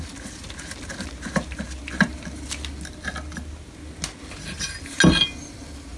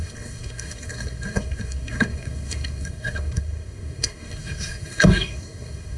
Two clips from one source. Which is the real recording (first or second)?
first